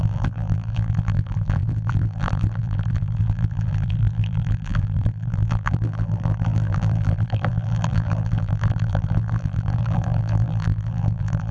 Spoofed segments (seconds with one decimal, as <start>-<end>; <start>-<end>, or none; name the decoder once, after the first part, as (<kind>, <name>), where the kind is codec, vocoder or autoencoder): 0.0-11.5 (vocoder, BigVGAN v2)